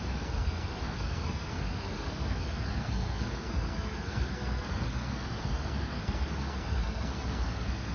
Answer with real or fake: fake